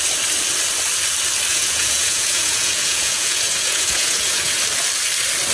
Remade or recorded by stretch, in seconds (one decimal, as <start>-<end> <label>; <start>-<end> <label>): 0.0-1.5 recorded; 1.5-4.6 remade; 4.6-5.5 recorded